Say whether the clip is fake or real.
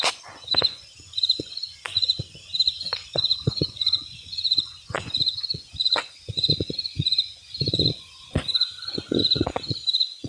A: fake